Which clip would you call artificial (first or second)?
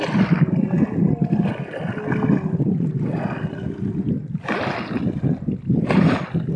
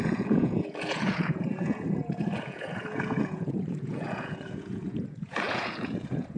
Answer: second